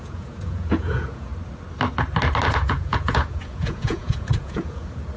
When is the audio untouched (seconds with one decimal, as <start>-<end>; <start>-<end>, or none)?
1.3-2.5